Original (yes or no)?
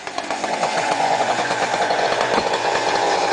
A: no